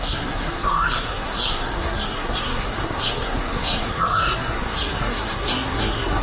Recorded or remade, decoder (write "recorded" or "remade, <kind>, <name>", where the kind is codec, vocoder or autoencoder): remade, codec, SNAC